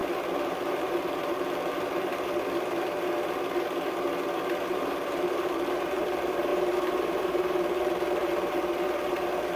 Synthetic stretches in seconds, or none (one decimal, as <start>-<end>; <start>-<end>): 0.0-2.1; 4.7-9.6